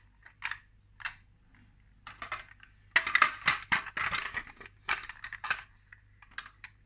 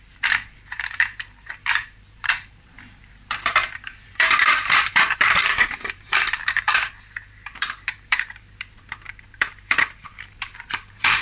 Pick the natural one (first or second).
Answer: first